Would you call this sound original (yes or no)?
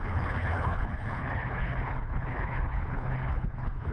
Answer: no